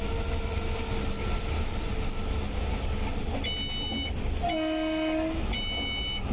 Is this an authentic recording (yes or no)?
yes